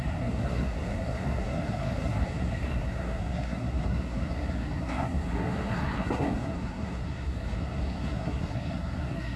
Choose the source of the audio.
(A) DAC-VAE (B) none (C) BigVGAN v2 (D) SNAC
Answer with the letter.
D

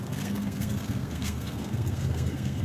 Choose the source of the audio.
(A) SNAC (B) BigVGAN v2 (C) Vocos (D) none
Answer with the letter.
A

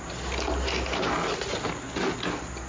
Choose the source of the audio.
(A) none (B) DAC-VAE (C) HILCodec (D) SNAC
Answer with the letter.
A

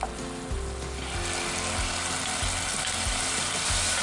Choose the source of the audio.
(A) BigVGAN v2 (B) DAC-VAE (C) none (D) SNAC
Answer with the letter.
C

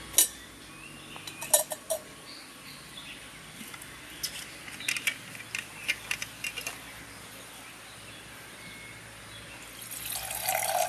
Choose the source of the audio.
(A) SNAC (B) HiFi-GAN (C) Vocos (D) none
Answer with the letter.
D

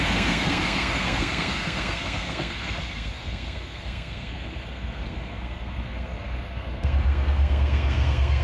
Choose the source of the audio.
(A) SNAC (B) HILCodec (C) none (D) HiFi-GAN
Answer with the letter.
A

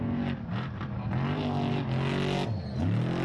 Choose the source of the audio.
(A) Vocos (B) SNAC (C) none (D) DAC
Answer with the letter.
C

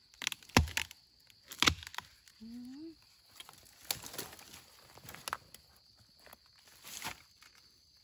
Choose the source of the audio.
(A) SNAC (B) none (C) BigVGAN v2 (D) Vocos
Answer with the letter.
B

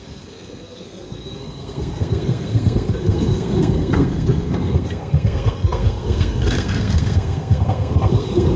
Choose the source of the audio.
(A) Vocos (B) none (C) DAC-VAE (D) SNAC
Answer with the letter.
D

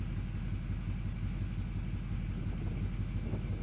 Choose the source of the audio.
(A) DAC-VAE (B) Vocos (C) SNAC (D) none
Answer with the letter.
D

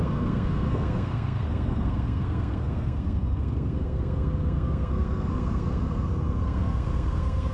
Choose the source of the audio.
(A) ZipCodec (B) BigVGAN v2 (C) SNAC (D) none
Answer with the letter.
C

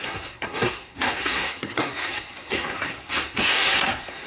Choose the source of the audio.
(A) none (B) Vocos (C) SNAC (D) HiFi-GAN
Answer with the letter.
C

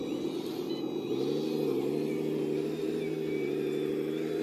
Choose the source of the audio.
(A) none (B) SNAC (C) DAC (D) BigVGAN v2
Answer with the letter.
A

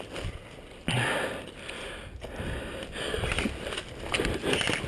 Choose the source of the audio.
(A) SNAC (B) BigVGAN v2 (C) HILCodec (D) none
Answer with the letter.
D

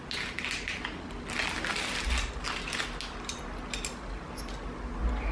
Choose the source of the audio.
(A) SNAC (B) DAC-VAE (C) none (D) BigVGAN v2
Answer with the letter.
C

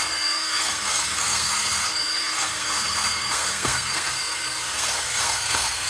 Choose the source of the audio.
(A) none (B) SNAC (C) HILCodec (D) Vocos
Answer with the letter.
B